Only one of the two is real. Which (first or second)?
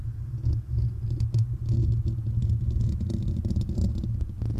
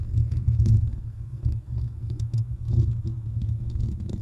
first